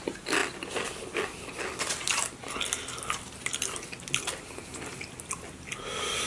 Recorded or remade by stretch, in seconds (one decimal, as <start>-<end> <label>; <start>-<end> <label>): 0.0-6.3 recorded